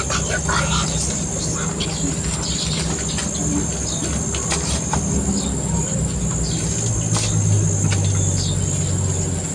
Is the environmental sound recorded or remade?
recorded